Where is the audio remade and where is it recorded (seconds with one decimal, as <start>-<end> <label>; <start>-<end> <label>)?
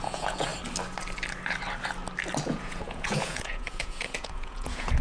0.0-0.5 remade; 0.5-2.4 recorded; 2.4-5.0 remade